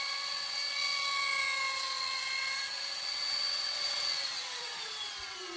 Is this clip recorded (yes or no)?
no